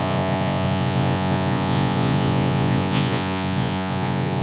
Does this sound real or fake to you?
fake